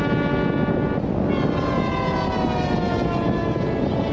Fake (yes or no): no